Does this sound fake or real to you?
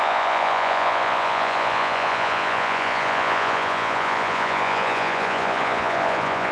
fake